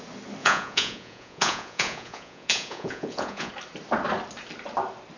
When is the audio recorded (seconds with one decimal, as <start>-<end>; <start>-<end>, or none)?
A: 0.0-0.4; 3.5-5.2